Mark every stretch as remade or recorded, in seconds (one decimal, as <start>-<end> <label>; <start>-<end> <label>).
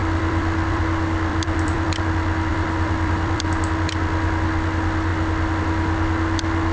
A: 0.0-0.8 remade; 0.8-1.3 recorded; 1.3-2.0 remade; 2.0-2.5 recorded; 2.5-3.5 remade; 3.5-6.7 recorded